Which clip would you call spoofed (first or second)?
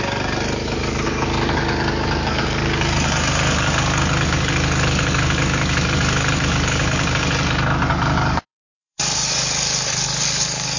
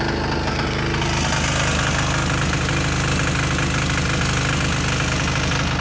first